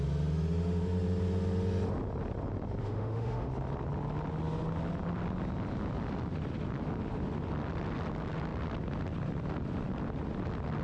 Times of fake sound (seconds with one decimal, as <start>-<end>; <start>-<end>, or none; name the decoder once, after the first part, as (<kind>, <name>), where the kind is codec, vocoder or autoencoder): 2.8-3.5 (autoencoder, DAC-VAE)